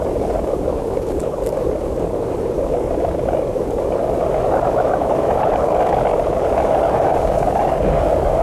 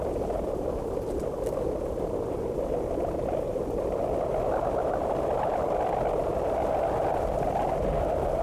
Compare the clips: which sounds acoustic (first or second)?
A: second